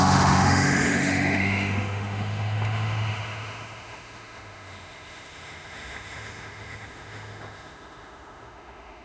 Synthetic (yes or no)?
yes